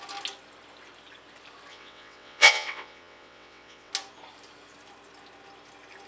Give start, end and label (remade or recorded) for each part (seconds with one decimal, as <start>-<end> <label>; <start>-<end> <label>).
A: 0.0-1.7 recorded; 1.7-3.9 remade; 3.9-6.1 recorded